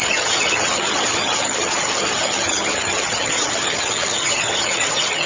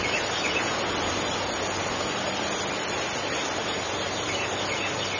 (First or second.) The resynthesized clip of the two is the first